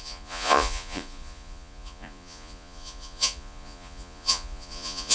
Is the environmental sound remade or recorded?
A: remade